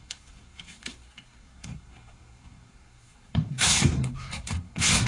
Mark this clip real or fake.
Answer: fake